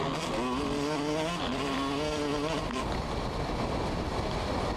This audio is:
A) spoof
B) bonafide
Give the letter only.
B